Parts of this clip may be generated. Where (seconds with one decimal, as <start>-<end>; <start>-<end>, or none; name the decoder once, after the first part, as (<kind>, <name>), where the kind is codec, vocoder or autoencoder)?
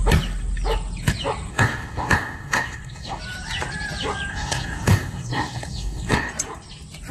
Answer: 1.5-3.2 (codec, SNAC); 4.3-6.3